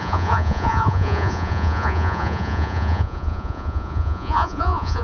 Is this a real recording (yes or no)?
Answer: no